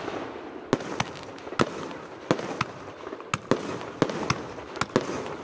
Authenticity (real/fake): real